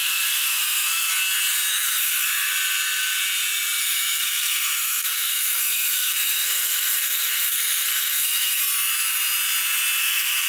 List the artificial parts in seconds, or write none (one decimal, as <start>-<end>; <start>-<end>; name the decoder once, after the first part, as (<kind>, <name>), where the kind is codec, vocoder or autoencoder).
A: 0.0-1.1 (codec, SNAC); 1.7-2.5; 3.8-8.6; 10.0-10.5